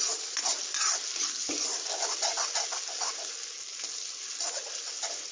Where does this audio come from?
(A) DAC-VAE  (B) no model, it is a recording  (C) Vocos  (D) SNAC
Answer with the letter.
B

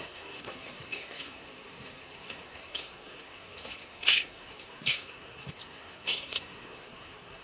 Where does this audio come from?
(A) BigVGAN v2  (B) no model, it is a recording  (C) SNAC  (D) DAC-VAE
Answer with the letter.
C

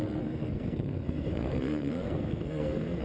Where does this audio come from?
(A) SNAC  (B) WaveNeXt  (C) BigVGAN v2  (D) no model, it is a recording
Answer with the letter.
A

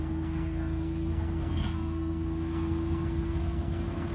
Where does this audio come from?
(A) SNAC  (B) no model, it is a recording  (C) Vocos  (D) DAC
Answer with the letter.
A